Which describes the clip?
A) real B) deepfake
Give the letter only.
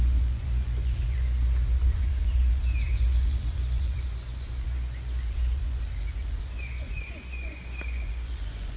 B